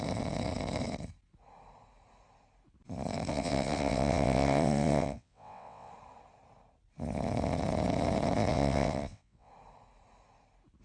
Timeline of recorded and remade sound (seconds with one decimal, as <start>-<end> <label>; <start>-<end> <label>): 0.0-3.3 recorded; 3.3-5.9 remade; 5.9-8.5 recorded; 8.5-9.5 remade; 9.5-10.8 recorded